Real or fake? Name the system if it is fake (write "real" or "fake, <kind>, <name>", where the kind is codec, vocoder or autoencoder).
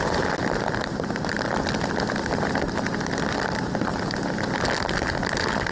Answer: real